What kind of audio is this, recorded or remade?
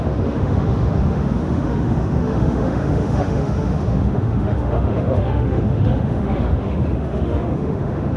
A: remade